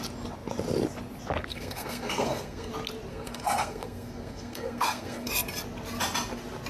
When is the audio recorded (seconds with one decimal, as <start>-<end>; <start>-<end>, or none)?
0.0-1.5; 2.7-3.1; 5.3-6.7